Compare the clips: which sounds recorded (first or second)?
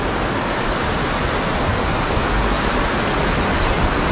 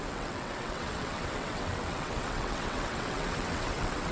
first